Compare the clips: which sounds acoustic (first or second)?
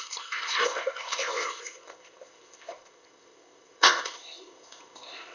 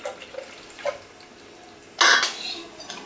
second